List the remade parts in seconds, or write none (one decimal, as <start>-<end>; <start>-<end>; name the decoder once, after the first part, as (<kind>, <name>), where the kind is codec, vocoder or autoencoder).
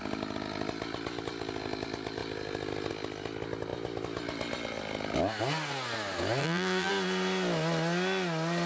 6.4-6.9 (vocoder, BigVGAN v2)